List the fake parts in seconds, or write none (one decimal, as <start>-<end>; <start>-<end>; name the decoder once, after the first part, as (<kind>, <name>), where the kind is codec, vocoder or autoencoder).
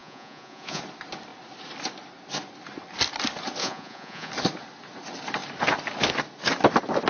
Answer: 0.0-0.8 (vocoder, Vocos); 3.6-4.3